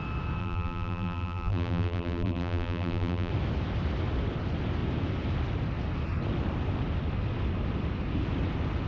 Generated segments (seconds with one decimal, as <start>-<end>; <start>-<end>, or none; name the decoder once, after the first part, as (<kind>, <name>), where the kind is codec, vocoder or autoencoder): 0.4-3.3 (vocoder, BigVGAN v2)